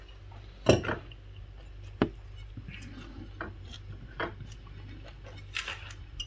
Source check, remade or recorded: recorded